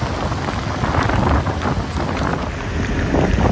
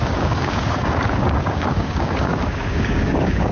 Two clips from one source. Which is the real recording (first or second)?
first